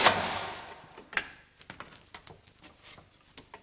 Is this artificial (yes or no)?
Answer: no